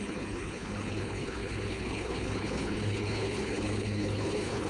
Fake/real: fake